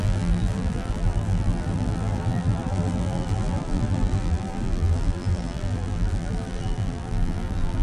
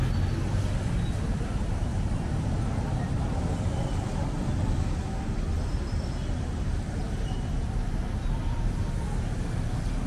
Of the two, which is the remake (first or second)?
first